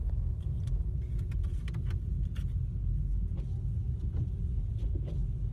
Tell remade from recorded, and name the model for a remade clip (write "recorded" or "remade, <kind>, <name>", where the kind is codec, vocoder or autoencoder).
recorded